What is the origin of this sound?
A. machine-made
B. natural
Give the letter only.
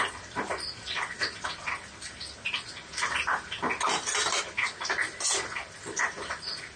B